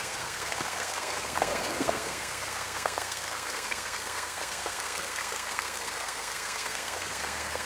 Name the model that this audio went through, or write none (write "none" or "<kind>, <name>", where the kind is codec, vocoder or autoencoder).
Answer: codec, SNAC